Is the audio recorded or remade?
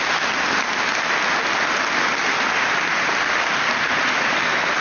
recorded